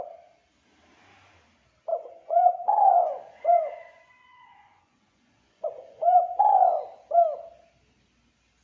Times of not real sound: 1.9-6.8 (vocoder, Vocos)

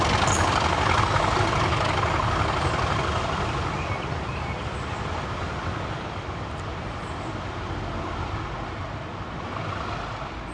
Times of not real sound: none

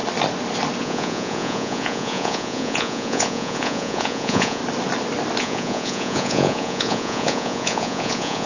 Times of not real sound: 0.8-4.6 (vocoder, Vocos); 5.4-8.5

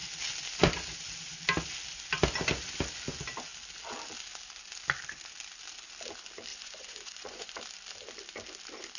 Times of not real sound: 6.5-7.6 (vocoder, Vocos)

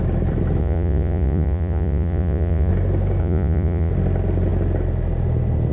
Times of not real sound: 0.6-2.7 (vocoder, Vocos); 3.2-3.9